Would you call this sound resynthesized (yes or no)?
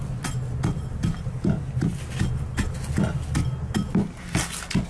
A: no